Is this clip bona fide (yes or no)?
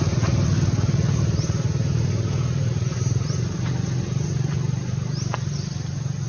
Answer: yes